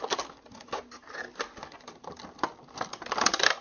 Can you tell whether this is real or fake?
real